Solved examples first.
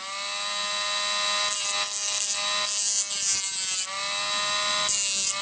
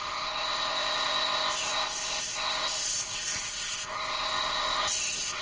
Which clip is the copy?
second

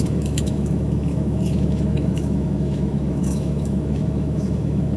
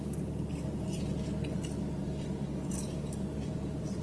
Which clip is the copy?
first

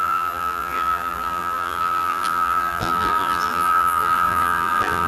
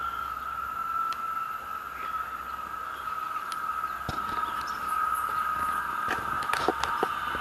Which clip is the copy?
first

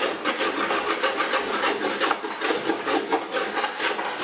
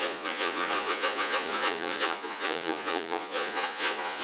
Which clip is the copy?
second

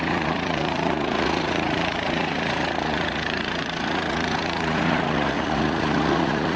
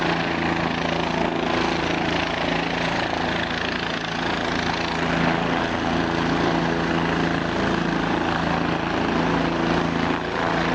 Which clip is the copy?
first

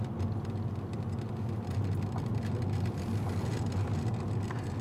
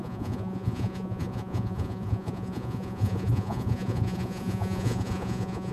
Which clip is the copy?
second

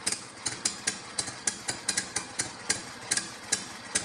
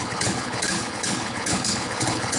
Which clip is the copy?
second